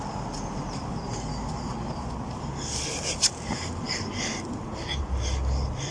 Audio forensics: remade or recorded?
recorded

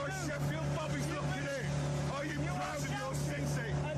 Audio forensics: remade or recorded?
recorded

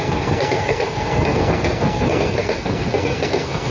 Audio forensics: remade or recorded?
remade